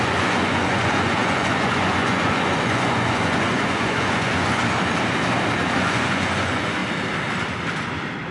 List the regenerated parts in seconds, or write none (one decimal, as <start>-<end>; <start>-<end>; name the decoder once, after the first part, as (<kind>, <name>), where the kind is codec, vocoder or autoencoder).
0.0-4.6 (vocoder, Vocos); 5.8-6.8

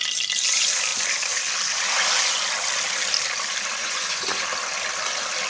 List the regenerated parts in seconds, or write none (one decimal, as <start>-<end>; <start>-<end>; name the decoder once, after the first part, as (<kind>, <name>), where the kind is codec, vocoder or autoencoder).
3.8-4.4 (vocoder, Vocos)

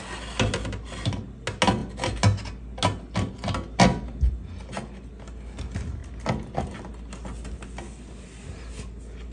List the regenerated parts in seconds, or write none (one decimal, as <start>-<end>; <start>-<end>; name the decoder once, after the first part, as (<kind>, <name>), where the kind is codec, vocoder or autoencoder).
none

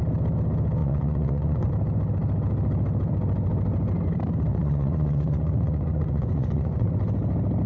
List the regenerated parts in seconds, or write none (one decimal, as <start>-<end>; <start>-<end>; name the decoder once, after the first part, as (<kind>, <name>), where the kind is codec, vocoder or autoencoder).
0.8-1.7 (vocoder, Vocos); 4.5-6.9